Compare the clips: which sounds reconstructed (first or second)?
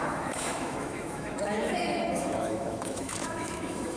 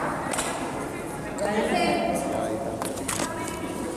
first